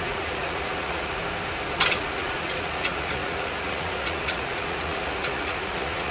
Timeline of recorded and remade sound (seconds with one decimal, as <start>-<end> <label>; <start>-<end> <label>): 0.0-1.2 remade; 1.2-1.9 recorded; 1.9-6.1 remade